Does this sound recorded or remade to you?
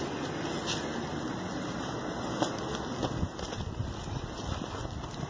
recorded